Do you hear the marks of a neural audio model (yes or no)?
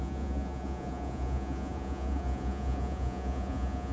yes